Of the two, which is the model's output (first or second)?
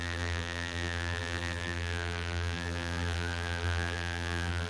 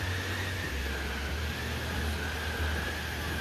first